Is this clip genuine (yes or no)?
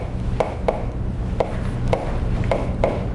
yes